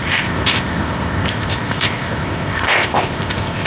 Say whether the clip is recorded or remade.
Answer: remade